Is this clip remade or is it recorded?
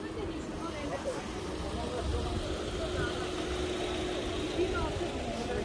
recorded